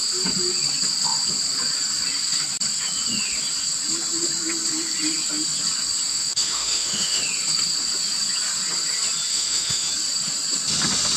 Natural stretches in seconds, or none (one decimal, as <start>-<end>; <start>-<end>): 0.0-6.1; 7.2-9.3; 9.9-11.2